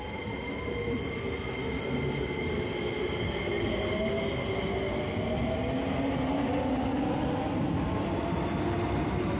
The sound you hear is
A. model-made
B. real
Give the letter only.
B